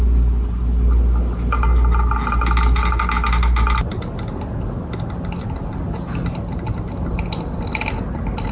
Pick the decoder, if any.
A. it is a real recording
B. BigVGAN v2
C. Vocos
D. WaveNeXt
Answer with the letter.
A